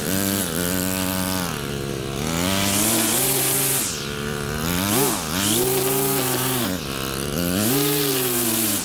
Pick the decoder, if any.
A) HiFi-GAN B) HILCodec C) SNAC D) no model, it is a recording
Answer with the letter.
D